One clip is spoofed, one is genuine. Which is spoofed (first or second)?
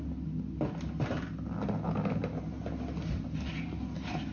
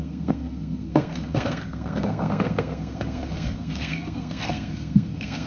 second